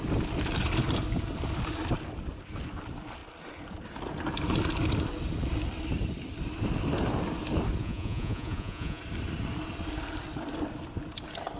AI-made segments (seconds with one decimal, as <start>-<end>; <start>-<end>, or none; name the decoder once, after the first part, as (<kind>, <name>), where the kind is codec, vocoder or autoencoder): 7.8-9.0 (vocoder, Vocos)